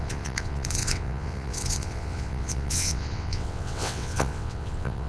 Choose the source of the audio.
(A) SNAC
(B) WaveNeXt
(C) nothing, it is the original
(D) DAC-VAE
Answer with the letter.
B